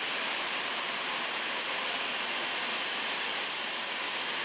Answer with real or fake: real